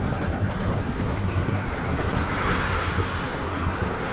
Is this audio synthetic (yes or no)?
yes